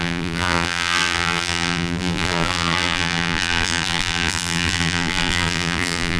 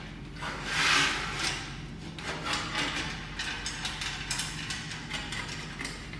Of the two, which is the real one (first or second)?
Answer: second